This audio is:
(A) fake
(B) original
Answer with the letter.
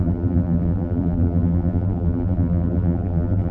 A